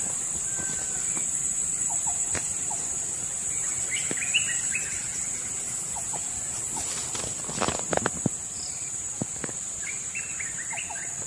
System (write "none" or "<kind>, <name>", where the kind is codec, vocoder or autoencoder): none